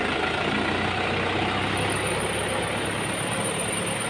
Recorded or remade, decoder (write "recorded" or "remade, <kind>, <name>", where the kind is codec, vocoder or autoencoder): recorded